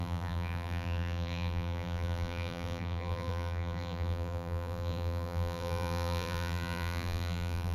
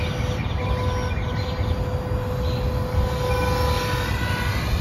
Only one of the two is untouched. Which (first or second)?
second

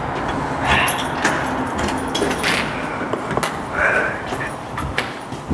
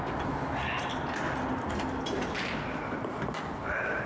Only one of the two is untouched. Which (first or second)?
first